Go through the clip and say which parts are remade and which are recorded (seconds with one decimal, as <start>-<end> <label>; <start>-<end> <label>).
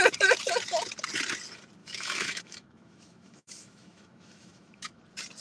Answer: 0.0-1.8 recorded; 1.8-5.0 remade; 5.0-5.4 recorded